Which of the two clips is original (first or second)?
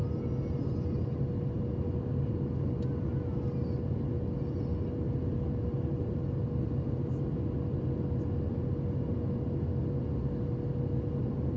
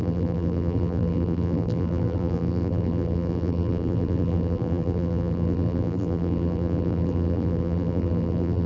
first